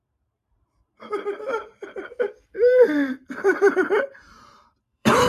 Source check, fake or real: fake